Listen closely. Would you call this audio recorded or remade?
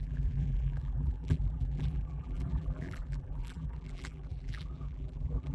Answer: remade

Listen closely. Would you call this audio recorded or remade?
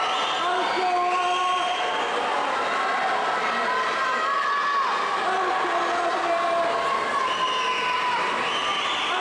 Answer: recorded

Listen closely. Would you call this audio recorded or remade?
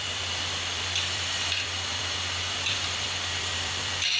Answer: remade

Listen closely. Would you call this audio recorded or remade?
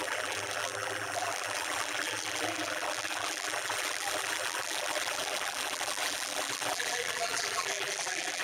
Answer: remade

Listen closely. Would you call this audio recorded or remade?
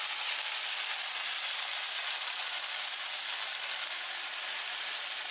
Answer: recorded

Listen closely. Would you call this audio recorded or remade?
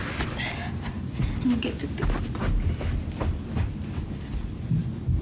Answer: recorded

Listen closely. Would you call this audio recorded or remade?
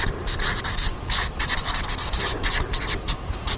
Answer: remade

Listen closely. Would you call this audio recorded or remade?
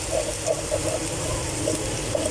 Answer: recorded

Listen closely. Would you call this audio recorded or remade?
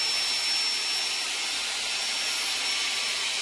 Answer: recorded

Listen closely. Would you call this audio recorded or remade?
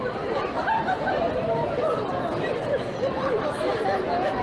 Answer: remade